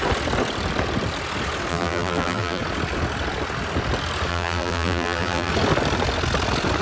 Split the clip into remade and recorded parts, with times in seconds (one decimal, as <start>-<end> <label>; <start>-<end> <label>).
0.0-1.7 recorded; 1.7-2.6 remade; 2.6-4.3 recorded; 4.3-5.5 remade; 5.5-6.8 recorded